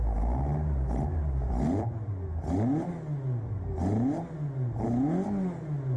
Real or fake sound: real